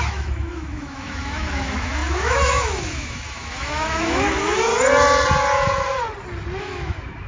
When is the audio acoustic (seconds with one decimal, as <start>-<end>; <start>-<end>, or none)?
4.7-6.6